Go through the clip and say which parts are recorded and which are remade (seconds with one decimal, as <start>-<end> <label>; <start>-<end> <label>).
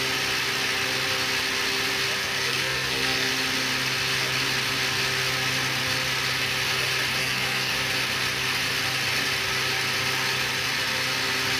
0.0-2.2 recorded; 2.2-3.3 remade; 3.3-7.2 recorded; 7.2-7.7 remade; 7.7-11.6 recorded